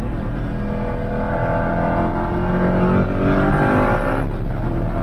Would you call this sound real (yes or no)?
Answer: yes